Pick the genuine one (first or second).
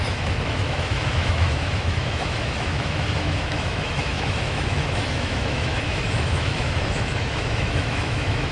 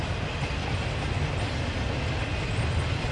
second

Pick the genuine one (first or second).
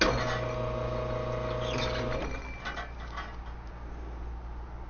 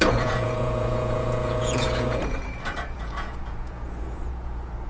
first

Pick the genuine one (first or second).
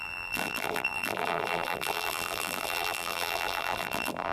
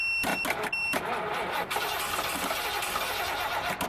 second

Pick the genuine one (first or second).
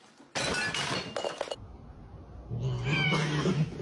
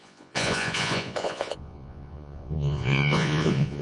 first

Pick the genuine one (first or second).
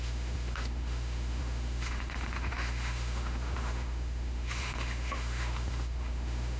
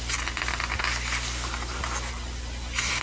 second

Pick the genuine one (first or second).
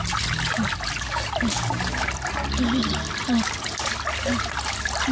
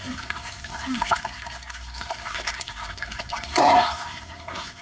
first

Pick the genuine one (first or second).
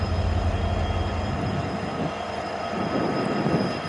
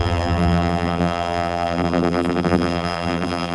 first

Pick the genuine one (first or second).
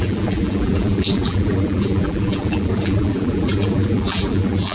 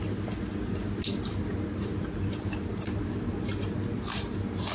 second